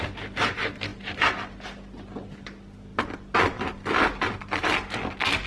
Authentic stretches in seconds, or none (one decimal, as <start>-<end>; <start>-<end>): 0.0-5.5

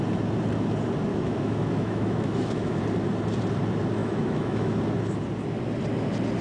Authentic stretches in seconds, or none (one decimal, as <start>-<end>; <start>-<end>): 0.0-1.1; 2.8-4.0; 4.8-6.4

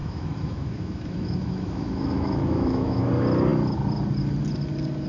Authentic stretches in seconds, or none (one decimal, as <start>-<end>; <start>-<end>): 3.1-5.1

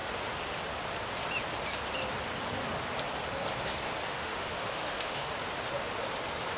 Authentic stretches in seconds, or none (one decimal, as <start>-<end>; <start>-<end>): 0.0-4.1; 5.3-6.6

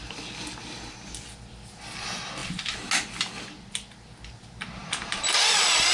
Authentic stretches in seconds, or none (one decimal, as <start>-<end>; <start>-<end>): 0.0-5.9

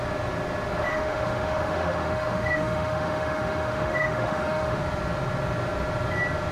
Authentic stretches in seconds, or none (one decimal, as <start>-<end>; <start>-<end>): 0.0-0.9; 4.8-6.5

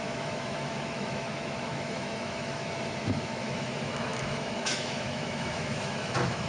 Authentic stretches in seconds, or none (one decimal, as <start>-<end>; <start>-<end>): none

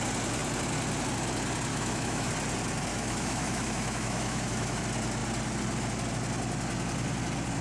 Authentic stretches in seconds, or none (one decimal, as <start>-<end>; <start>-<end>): 0.0-1.7; 2.3-2.9; 4.8-7.6